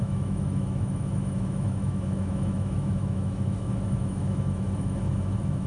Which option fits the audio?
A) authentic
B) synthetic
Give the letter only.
B